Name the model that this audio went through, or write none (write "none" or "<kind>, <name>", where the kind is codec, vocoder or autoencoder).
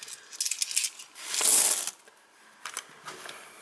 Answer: none